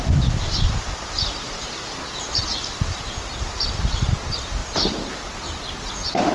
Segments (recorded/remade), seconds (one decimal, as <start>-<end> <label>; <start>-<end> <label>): 0.0-2.5 remade; 2.5-3.4 recorded; 3.4-4.6 remade; 4.6-5.1 recorded; 5.1-6.3 remade

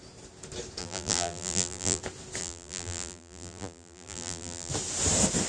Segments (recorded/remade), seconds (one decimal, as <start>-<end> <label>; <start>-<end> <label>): 0.0-0.8 recorded; 0.8-2.0 remade; 2.0-2.4 recorded; 2.4-4.7 remade; 4.7-5.5 recorded

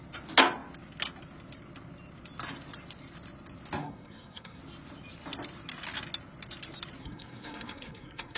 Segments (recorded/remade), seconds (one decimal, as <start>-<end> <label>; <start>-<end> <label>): 0.0-3.8 recorded; 3.8-4.6 remade; 4.6-7.0 recorded; 7.0-8.4 remade

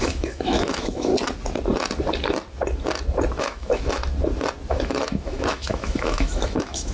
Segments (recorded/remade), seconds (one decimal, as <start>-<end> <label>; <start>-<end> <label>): 0.0-1.1 remade; 1.1-3.4 recorded; 3.4-4.0 remade; 4.0-4.7 recorded; 4.7-6.9 remade

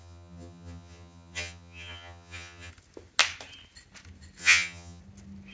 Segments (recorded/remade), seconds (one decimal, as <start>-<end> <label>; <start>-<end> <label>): 0.0-2.7 remade; 2.7-4.4 recorded; 4.4-5.0 remade; 5.0-5.5 recorded

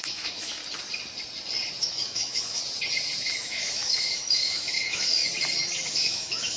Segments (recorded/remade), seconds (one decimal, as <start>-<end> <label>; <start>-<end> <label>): 0.0-0.6 remade; 0.6-1.8 recorded; 1.8-2.6 remade; 2.6-3.3 recorded; 3.3-5.2 remade; 5.2-5.9 recorded; 5.9-6.6 remade

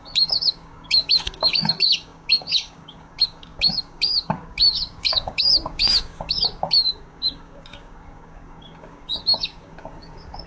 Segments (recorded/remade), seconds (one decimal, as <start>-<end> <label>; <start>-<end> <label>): 0.0-10.5 remade

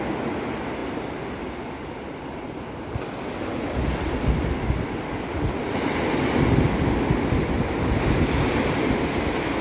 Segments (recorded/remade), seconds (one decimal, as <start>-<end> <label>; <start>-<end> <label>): 0.0-9.6 recorded